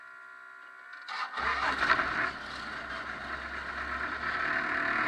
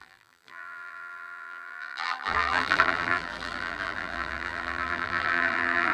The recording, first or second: first